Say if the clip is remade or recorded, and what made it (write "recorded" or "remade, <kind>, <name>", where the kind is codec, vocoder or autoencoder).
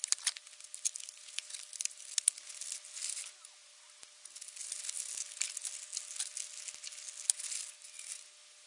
recorded